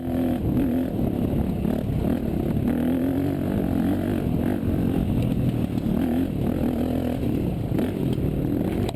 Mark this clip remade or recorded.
recorded